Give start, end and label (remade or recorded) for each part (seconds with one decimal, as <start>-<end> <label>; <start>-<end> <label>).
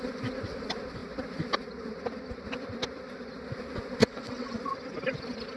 0.0-4.0 recorded; 4.0-4.6 remade; 4.6-5.6 recorded